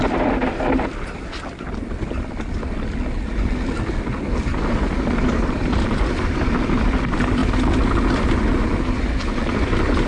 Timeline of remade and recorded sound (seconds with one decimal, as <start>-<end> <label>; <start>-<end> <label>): 0.0-7.4 remade; 7.4-8.1 recorded; 8.1-10.1 remade